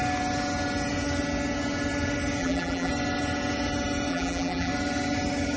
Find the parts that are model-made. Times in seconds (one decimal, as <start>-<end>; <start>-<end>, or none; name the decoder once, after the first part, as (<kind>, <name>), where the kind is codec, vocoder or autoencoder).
2.4-2.9 (vocoder, BigVGAN v2); 4.1-4.7